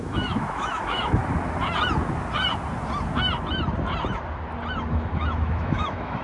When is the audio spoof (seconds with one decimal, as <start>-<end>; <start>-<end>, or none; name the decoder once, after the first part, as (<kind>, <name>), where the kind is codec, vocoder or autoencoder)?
0.0-1.2 (autoencoder, DAC-VAE); 4.9-6.2